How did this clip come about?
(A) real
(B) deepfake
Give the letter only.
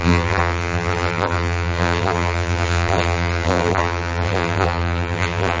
B